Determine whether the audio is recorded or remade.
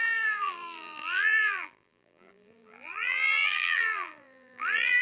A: remade